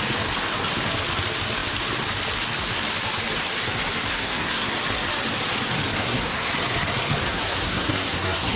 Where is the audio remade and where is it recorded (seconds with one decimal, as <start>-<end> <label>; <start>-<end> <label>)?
0.0-4.1 recorded; 4.1-4.7 remade; 4.7-6.0 recorded; 6.0-6.5 remade; 6.5-7.3 recorded; 7.3-8.6 remade